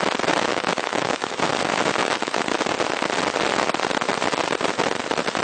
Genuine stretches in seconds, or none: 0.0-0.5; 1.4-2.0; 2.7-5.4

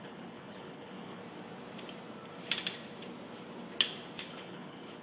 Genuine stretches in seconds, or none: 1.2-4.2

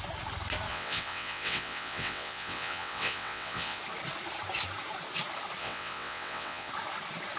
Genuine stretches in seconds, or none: 0.0-0.7; 3.8-5.6; 6.7-7.4

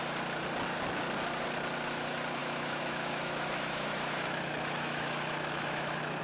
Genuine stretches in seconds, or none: 0.0-2.4

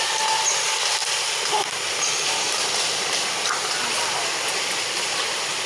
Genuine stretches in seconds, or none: 0.0-1.0; 4.4-5.7

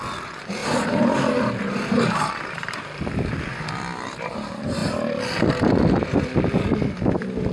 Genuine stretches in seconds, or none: 0.0-0.6; 2.7-7.5

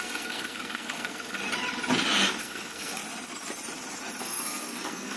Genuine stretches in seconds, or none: 1.4-2.4; 3.0-4.2

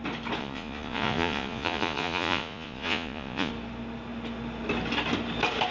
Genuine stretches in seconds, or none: 0.0-0.4; 3.5-5.7